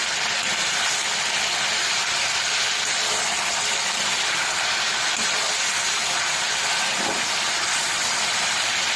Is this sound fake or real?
real